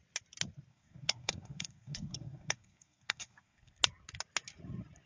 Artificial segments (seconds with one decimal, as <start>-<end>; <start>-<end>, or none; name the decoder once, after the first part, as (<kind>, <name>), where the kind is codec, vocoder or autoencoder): 0.7-3.8 (codec, SNAC)